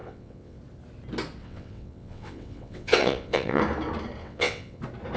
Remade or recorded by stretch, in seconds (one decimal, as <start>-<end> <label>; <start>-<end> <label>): 0.0-0.6 remade; 0.6-1.4 recorded; 1.4-3.6 remade; 3.6-4.2 recorded; 4.2-4.8 remade; 4.8-5.2 recorded